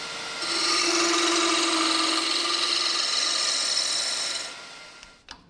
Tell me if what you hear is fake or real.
real